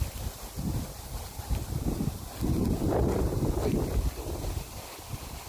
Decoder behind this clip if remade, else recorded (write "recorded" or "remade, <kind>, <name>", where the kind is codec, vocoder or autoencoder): remade, vocoder, BigVGAN v2